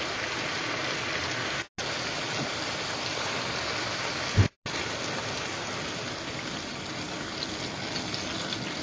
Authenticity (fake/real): real